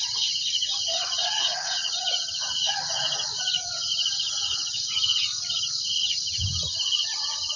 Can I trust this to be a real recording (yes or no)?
no